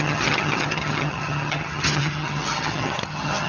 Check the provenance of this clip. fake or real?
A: fake